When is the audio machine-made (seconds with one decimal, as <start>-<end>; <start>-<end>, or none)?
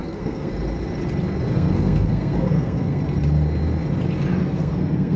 0.0-0.5; 1.5-3.0; 4.4-5.2